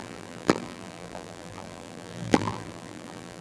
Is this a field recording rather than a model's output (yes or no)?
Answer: no